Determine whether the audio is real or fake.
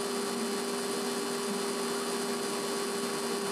real